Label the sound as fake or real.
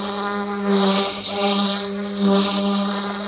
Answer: real